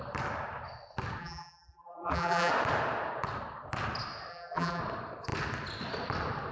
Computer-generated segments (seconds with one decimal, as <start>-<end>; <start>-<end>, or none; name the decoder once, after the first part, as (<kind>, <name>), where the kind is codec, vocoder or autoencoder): 1.2-2.5 (vocoder, BigVGAN v2); 4.3-4.8